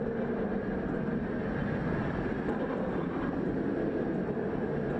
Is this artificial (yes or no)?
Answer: no